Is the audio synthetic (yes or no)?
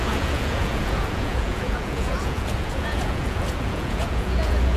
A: yes